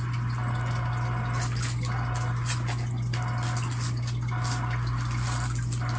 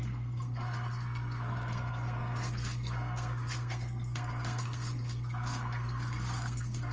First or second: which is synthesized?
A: second